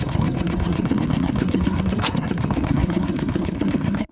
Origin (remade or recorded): remade